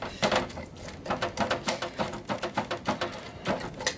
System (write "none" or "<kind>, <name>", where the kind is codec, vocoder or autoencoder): none